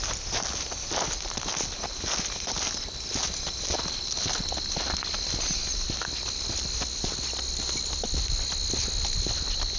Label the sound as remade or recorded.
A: recorded